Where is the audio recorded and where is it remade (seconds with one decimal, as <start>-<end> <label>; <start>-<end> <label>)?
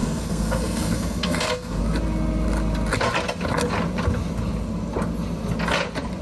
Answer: 0.0-1.8 remade; 1.8-6.2 recorded